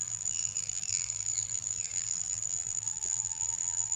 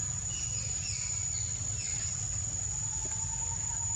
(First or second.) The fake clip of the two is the first